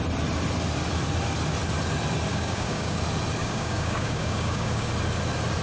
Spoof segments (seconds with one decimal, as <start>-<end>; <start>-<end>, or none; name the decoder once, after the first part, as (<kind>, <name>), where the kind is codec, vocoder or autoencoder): 2.3-3.0 (codec, DAC); 3.4-4.9